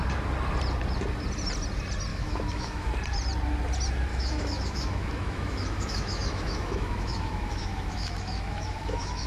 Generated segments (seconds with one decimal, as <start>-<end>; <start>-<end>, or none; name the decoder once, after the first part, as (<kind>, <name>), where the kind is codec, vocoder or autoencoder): 2.1-2.9 (autoencoder, DAC-VAE); 4.1-9.3